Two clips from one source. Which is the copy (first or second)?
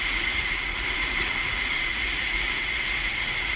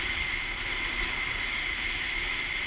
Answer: first